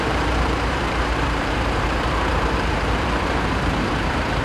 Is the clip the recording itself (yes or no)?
no